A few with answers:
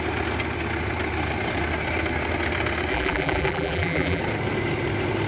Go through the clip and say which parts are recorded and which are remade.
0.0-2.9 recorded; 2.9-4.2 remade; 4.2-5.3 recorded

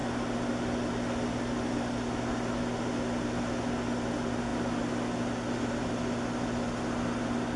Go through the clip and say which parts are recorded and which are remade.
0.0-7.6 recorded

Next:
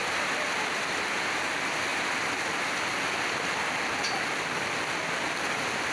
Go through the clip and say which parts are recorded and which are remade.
0.0-5.9 recorded

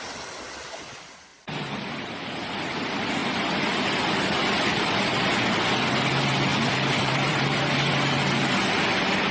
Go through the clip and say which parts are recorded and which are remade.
0.0-1.3 recorded; 1.3-2.2 remade; 2.2-4.4 recorded; 4.4-5.2 remade; 5.2-6.5 recorded; 6.5-7.6 remade; 7.6-9.3 recorded

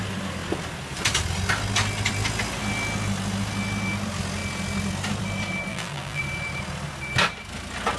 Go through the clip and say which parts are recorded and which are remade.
0.0-5.7 recorded; 5.7-6.2 remade; 6.2-8.0 recorded